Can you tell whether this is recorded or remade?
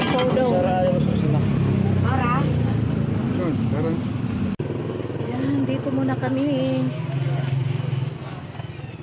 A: recorded